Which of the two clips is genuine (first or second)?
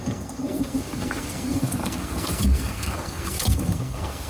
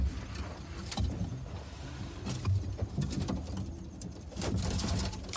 second